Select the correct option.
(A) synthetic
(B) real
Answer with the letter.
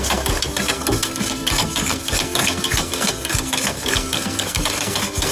A